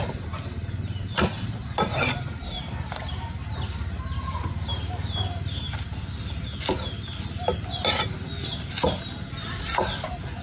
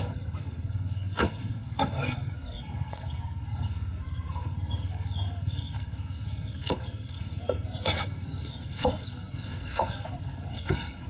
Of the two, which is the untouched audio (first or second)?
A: first